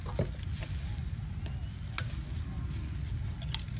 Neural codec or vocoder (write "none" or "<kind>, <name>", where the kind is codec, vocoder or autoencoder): none